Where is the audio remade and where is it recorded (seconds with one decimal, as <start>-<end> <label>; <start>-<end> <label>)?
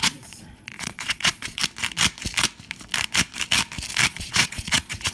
0.0-1.6 remade; 1.6-4.1 recorded; 4.1-5.1 remade